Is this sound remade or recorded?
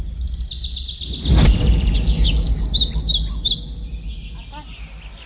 recorded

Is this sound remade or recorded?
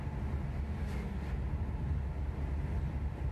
recorded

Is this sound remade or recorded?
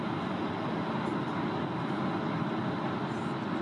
recorded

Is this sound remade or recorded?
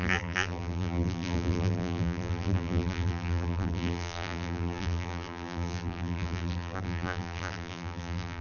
remade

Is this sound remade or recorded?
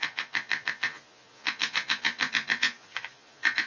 remade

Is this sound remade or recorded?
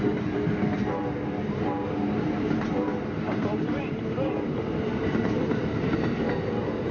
remade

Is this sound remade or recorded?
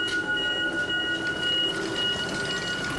recorded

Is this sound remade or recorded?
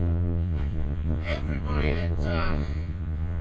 remade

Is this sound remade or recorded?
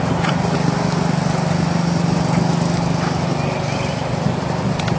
recorded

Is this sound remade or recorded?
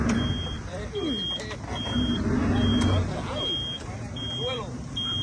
recorded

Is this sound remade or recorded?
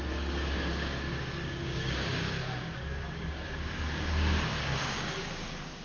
remade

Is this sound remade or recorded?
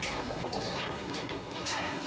remade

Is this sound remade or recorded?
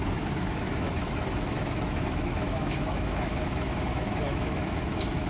remade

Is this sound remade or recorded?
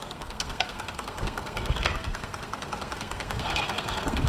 remade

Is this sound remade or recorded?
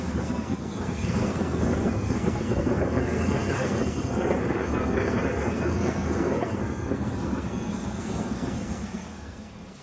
remade